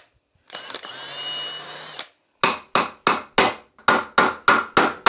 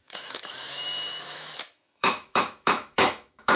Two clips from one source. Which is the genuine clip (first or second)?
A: first